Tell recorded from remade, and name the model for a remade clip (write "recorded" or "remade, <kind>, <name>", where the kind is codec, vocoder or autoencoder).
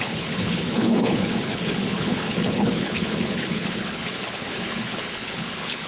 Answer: remade, codec, HILCodec